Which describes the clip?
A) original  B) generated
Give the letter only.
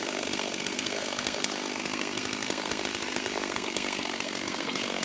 B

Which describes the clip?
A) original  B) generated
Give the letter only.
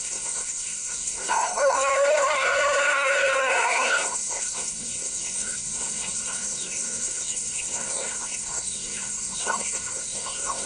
B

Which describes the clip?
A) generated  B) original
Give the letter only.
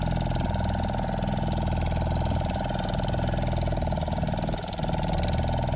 B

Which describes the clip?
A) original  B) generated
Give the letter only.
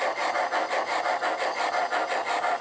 A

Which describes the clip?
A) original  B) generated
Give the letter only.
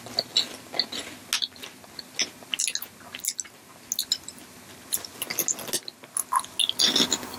A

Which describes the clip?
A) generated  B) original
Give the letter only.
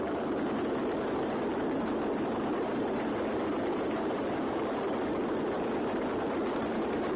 B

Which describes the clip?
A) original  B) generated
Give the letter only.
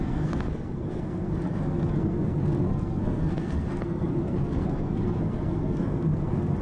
B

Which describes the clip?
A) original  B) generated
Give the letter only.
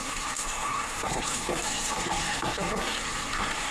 B